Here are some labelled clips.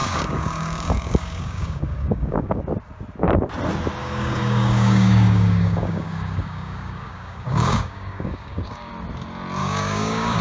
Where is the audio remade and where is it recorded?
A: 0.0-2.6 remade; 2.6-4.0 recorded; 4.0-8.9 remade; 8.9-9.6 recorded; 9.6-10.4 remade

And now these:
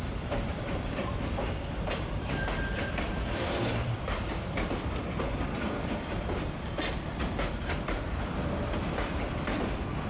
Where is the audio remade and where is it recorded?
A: 0.0-10.1 remade

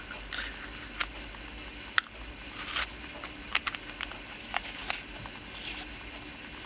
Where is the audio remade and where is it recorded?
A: 0.0-6.7 recorded

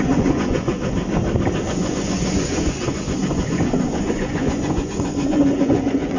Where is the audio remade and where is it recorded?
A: 0.0-1.0 remade; 1.0-1.7 recorded; 1.7-6.2 remade

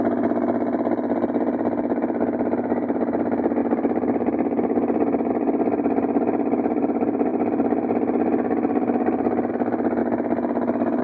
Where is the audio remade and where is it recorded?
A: 0.0-3.6 recorded; 3.6-5.3 remade; 5.3-11.0 recorded

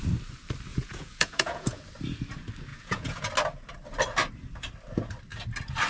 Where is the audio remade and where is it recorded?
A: 0.0-0.7 recorded; 0.7-1.8 remade; 1.8-2.7 recorded; 2.7-3.3 remade; 3.3-5.9 recorded